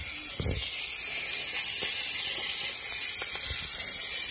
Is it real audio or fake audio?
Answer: real